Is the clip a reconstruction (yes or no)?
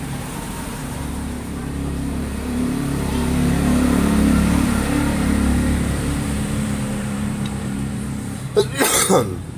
yes